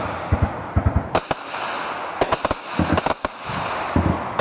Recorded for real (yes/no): yes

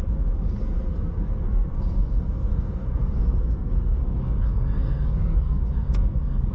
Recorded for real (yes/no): no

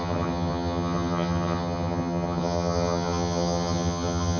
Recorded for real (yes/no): no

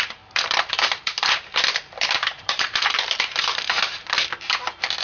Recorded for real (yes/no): no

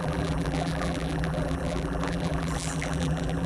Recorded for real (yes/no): no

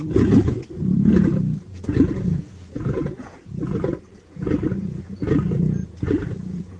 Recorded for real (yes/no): no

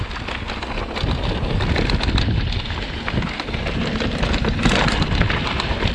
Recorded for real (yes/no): yes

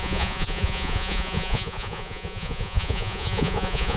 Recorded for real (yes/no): no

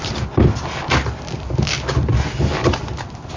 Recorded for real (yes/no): yes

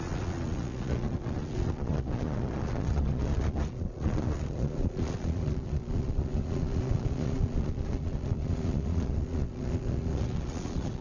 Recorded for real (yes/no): no